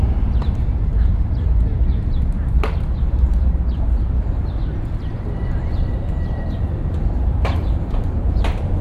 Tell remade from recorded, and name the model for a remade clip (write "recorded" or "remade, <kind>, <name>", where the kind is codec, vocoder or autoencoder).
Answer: remade, vocoder, BigVGAN v2